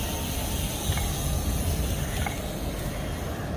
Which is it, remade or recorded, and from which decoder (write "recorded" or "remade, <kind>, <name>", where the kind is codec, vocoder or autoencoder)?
recorded